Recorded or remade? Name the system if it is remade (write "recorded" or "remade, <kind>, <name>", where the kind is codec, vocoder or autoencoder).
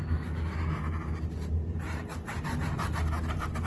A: recorded